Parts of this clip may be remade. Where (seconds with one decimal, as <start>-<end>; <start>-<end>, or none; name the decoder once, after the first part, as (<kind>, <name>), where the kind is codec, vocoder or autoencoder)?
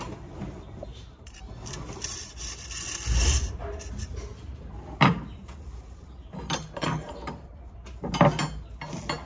0.9-1.4 (vocoder, BigVGAN v2); 4.3-8.1